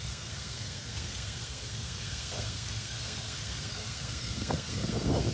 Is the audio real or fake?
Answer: fake